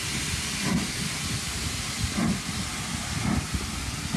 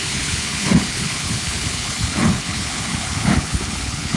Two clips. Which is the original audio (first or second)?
first